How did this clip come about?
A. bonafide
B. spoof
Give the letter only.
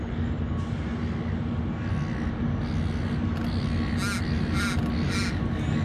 A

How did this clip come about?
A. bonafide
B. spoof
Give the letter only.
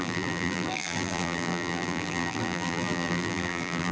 B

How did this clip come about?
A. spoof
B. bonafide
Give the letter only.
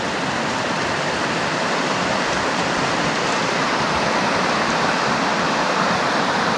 A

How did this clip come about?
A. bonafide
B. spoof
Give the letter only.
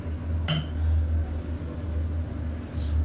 A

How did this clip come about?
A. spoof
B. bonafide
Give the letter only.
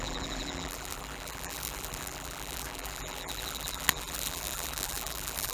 A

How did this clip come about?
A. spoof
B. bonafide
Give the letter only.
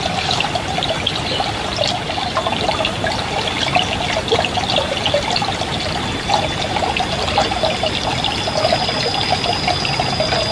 B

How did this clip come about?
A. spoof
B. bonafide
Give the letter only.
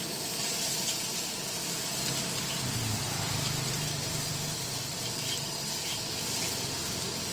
A